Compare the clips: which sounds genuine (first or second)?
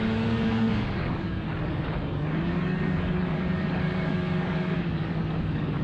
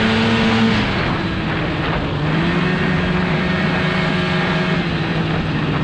second